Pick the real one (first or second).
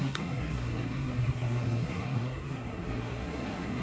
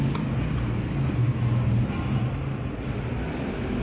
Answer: second